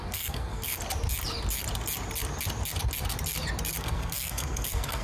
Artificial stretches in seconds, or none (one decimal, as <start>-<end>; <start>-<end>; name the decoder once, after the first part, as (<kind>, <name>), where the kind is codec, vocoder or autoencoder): 0.0-0.8 (codec, SNAC); 3.8-5.0